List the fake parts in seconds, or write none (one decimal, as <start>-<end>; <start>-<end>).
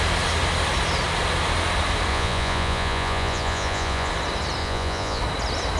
2.1-4.1; 4.6-5.2